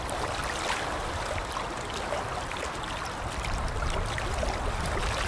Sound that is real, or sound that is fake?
real